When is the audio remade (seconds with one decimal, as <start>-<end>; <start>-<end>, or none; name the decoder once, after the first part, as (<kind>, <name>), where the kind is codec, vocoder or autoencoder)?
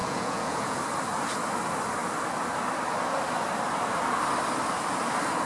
0.0-0.8 (vocoder, Vocos)